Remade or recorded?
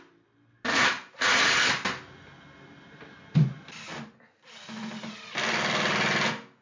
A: recorded